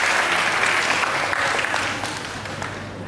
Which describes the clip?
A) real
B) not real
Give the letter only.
A